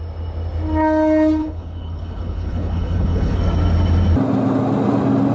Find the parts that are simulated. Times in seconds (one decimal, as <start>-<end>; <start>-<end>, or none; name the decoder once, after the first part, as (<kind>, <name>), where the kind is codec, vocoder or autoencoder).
1.4-3.4 (codec, HILCodec)